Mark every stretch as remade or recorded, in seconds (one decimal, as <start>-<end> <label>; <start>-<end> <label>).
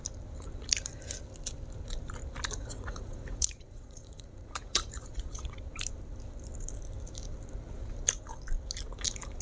0.0-2.6 recorded; 2.6-5.5 remade; 5.5-9.4 recorded